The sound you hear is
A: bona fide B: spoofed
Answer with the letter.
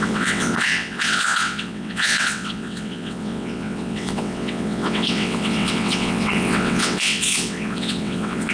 B